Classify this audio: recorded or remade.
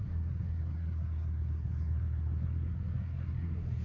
remade